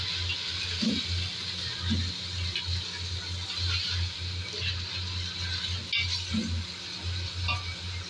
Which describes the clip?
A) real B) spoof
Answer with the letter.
A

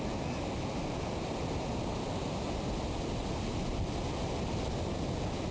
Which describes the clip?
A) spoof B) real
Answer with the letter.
B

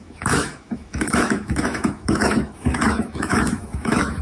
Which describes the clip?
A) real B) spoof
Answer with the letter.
B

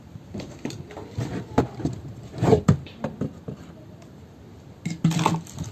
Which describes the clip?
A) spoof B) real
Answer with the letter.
B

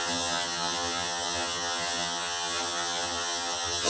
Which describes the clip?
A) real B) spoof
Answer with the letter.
B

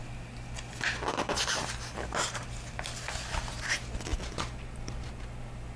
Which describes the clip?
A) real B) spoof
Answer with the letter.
A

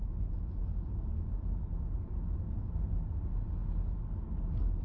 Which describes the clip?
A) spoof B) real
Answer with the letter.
B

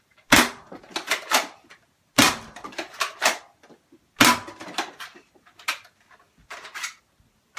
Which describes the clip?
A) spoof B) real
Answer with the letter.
B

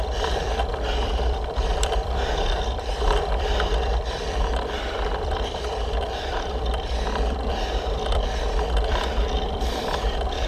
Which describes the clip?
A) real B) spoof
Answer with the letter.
B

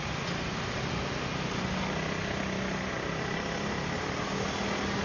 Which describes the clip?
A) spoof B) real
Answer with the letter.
B